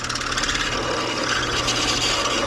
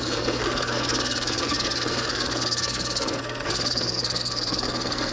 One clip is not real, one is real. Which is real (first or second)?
first